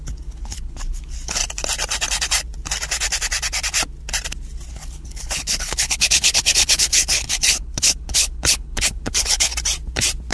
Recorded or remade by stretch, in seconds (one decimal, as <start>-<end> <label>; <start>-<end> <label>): 0.0-1.4 remade; 1.4-4.7 recorded; 4.7-9.5 remade; 9.5-10.3 recorded